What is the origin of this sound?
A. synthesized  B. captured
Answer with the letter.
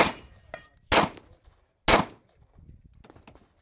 B